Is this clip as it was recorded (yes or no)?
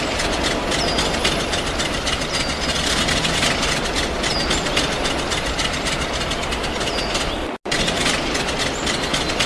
yes